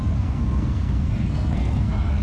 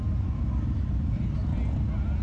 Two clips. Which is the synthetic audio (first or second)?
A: first